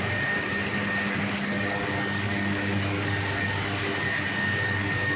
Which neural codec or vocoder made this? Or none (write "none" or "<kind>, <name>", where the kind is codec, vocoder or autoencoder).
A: codec, DAC